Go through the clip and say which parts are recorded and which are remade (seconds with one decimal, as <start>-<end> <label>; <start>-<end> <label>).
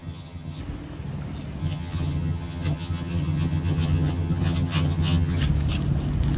0.0-0.6 remade; 0.6-1.6 recorded; 1.6-5.4 remade; 5.4-6.4 recorded